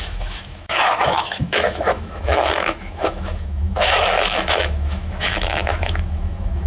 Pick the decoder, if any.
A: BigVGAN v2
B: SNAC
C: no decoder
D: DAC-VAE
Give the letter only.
D